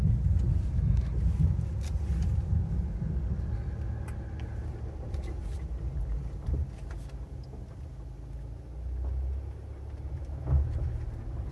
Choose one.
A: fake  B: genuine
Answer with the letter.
B